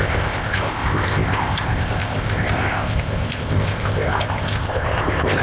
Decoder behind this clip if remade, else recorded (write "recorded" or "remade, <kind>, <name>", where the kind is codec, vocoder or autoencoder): remade, codec, ZipCodec